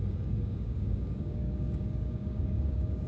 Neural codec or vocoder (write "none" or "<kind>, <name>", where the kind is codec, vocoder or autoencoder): codec, DAC